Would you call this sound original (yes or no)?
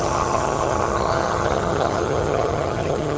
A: no